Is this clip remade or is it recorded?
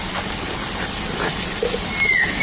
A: recorded